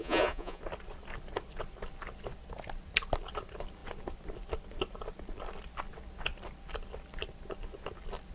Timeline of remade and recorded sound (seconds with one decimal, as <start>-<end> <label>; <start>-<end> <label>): 0.0-0.6 remade; 0.6-8.3 recorded